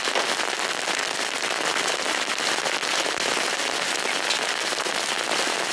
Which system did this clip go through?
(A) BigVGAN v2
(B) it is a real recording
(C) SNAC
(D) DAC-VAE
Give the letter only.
B